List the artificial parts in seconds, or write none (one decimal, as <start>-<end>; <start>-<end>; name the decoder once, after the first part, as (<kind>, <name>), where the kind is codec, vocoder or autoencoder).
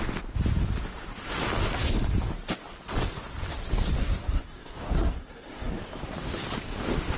4.0-5.7 (codec, SNAC)